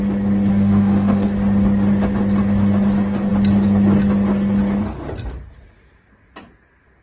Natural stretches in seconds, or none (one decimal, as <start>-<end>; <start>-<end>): 0.0-0.5; 1.3-7.0